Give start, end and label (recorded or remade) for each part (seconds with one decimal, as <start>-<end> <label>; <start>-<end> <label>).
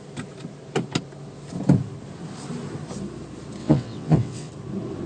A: 0.0-3.6 recorded; 3.6-4.5 remade; 4.5-5.1 recorded